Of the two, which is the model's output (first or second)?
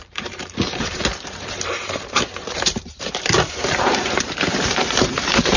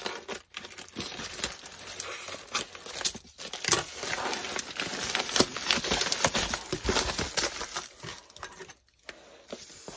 first